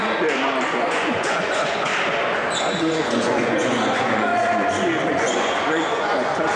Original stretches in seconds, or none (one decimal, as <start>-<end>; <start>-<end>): 0.0-0.9; 1.9-2.6; 4.3-5.1